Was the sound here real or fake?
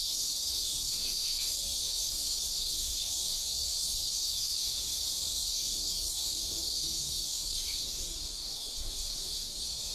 fake